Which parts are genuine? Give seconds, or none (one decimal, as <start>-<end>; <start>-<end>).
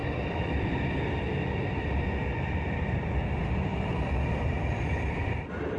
0.9-3.7; 4.3-5.8